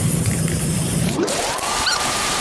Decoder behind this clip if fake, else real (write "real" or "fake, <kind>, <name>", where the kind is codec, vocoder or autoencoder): fake, vocoder, BigVGAN v2